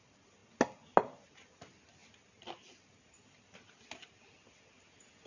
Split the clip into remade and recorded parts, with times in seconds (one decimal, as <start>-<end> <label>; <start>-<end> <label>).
0.0-5.3 recorded